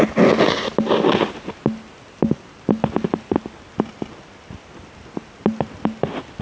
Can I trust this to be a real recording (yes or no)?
yes